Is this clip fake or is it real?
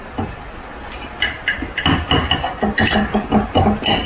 real